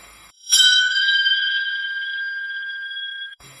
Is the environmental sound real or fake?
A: fake